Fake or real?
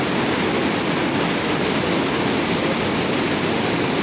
real